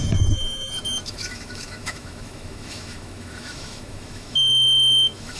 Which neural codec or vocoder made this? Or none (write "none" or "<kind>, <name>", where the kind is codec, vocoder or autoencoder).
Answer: autoencoder, DAC-VAE